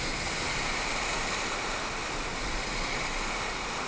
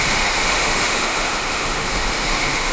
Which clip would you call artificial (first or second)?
second